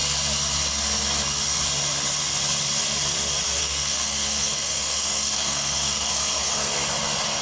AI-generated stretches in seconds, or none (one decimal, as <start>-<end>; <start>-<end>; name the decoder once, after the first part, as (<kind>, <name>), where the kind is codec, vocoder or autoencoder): 3.6-6.7 (codec, SNAC)